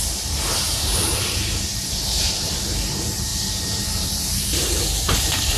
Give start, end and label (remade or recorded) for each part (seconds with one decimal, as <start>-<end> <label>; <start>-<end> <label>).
0.0-5.6 remade